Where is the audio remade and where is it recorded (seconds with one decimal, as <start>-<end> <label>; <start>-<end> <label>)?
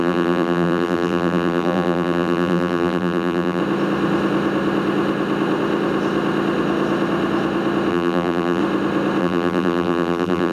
0.0-3.6 remade; 3.6-7.9 recorded; 7.9-8.6 remade; 8.6-9.2 recorded; 9.2-10.5 remade